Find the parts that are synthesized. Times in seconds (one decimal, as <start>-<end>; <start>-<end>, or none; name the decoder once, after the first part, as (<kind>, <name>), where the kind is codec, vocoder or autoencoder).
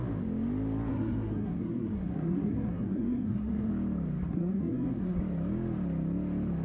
0.9-3.7 (codec, SNAC); 4.2-5.2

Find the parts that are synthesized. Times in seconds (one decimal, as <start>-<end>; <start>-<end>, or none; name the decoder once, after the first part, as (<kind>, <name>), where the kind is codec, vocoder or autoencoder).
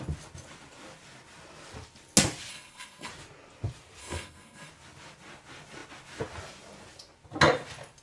2.5-3.1 (codec, SNAC); 4.0-4.7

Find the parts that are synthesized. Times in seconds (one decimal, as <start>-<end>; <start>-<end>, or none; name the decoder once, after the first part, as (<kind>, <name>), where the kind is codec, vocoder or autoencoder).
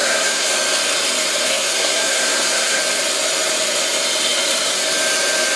0.0-0.5 (codec, SNAC); 1.5-2.8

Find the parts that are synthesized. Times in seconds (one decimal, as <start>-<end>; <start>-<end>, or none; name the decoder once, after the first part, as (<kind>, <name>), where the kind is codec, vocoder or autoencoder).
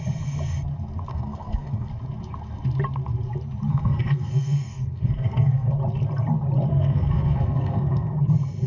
1.1-1.9 (codec, SNAC); 3.7-5.7; 6.7-8.2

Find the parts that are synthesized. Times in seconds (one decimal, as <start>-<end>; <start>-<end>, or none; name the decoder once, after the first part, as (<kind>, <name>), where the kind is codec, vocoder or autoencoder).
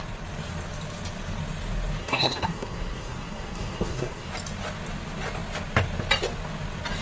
2.0-4.3 (codec, SNAC)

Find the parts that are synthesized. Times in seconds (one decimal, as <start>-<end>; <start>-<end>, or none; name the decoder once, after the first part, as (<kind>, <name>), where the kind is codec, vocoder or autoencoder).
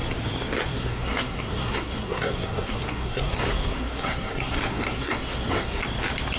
0.7-5.8 (codec, SNAC)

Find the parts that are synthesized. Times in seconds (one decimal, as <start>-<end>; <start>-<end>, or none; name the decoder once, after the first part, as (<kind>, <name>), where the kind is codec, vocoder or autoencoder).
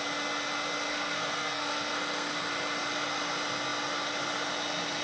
0.9-2.5 (codec, SNAC)